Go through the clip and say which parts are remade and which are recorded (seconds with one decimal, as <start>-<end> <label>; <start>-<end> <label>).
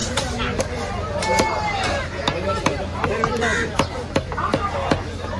0.0-0.6 remade; 0.6-5.4 recorded